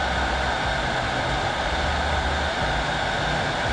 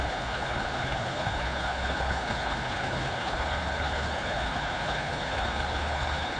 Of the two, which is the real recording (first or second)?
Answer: first